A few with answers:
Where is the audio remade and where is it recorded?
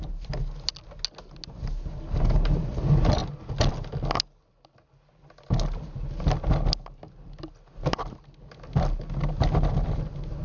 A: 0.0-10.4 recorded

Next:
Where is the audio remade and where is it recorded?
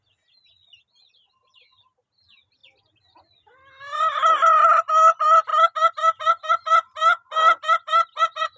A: 0.0-8.6 recorded